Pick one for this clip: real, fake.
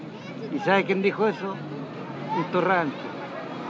real